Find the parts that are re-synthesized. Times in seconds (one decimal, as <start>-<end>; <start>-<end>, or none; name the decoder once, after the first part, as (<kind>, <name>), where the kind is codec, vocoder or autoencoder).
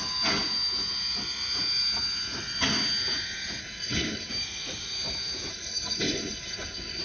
3.6-4.3 (codec, HILCodec); 5.5-7.0